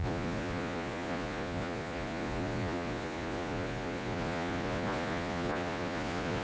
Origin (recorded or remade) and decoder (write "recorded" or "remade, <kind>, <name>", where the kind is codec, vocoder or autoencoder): remade, vocoder, Vocos